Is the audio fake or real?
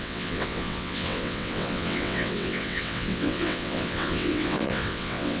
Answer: fake